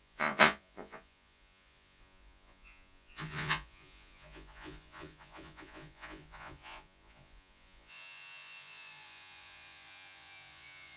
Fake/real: fake